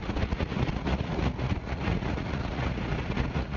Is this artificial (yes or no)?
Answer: yes